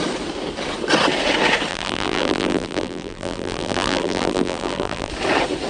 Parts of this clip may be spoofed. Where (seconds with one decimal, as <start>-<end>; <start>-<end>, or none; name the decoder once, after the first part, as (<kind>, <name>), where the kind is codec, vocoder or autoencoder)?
1.7-5.1 (vocoder, BigVGAN v2)